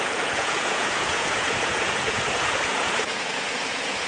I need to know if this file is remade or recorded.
remade